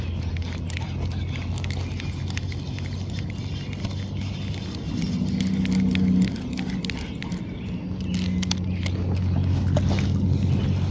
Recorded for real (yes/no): yes